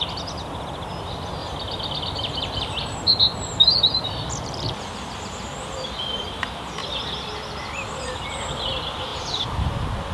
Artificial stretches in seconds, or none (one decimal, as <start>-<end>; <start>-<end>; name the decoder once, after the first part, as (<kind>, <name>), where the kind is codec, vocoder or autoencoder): 1.4-2.7 (vocoder, BigVGAN v2); 9.1-9.7